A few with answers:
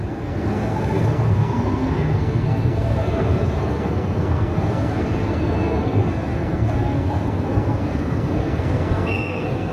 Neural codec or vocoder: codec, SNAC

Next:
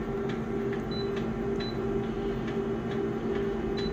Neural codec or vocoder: none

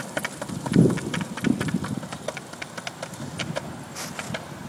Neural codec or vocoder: none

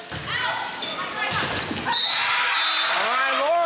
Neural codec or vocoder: none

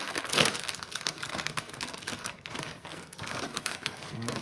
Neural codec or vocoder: codec, SNAC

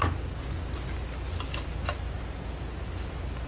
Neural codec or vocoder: none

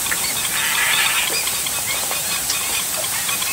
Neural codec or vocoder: none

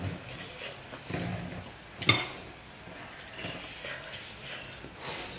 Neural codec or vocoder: none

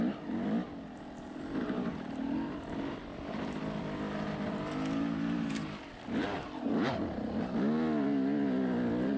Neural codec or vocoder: none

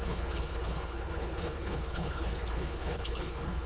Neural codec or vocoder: codec, HILCodec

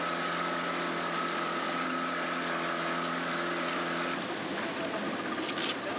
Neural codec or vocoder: none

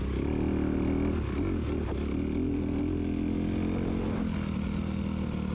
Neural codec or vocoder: none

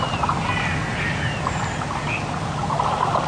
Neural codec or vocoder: none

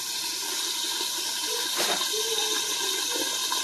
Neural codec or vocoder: none